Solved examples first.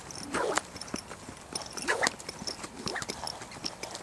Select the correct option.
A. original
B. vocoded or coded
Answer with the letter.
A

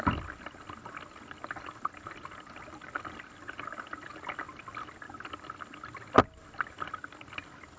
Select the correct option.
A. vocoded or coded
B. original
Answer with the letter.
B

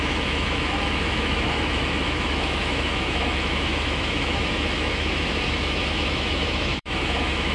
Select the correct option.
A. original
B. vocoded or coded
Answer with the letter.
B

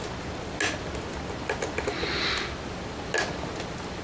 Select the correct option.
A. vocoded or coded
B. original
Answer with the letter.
B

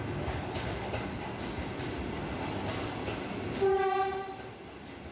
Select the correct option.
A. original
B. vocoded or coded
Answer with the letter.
A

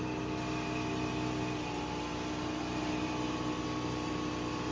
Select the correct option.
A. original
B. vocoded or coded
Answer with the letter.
A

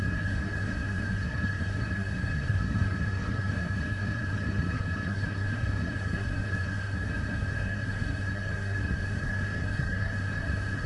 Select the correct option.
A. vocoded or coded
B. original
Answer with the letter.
A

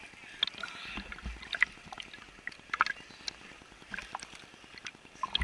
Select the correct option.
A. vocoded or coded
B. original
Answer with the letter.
B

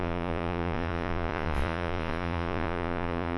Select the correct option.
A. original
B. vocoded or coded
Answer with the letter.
B